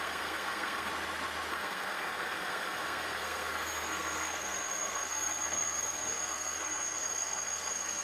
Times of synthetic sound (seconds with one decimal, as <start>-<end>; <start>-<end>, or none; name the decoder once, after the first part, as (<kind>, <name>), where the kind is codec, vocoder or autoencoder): 0.0-0.9 (codec, SNAC); 1.5-8.0